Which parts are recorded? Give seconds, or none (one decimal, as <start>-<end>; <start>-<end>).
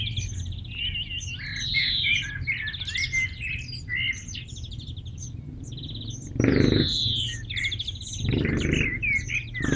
0.0-1.5; 2.3-9.8